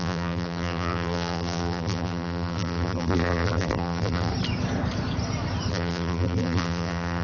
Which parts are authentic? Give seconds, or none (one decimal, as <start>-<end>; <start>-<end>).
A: 4.3-5.7